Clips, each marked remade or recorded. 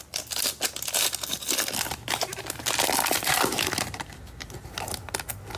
recorded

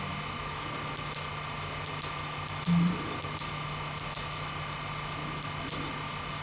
recorded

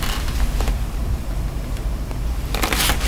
remade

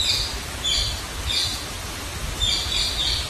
recorded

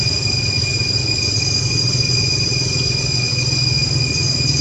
recorded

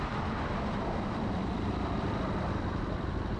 remade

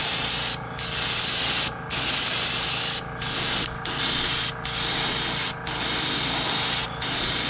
recorded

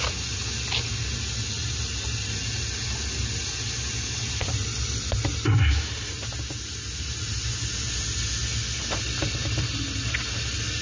recorded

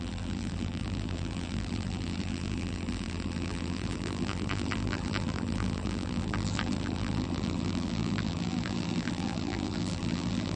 remade